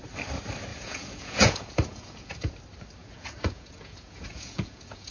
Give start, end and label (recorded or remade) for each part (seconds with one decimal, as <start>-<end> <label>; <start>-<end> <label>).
0.0-0.7 recorded; 0.7-2.5 remade; 2.5-3.0 recorded; 3.0-5.1 remade